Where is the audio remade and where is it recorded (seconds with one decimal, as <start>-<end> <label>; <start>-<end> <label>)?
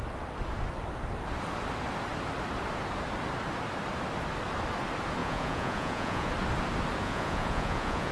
0.0-5.2 recorded; 5.2-6.3 remade; 6.3-7.0 recorded; 7.0-8.1 remade